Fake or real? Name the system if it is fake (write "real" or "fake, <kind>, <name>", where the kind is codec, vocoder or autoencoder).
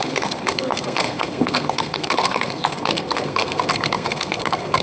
fake, codec, SNAC